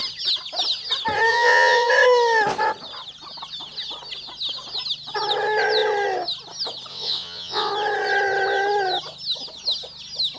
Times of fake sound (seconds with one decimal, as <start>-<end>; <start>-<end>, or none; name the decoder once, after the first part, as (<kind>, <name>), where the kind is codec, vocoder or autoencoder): 1.3-1.9 (vocoder, WaveNeXt); 6.9-7.7